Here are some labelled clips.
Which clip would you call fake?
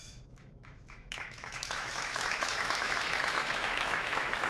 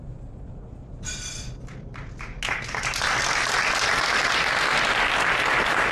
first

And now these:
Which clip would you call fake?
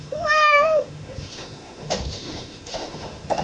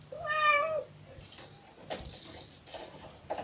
first